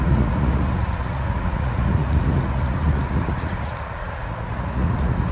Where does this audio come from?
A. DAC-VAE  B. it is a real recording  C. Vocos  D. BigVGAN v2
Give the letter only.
C